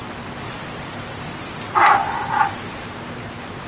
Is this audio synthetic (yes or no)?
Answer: no